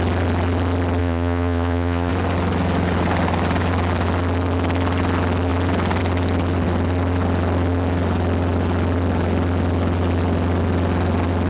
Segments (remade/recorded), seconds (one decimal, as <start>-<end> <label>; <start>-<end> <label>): 0.0-1.0 recorded; 1.0-2.1 remade; 2.1-11.5 recorded